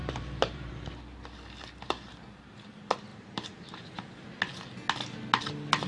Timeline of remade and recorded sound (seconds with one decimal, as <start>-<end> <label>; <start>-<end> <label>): 0.0-0.7 remade; 0.7-3.1 recorded; 3.1-3.7 remade; 3.7-5.9 recorded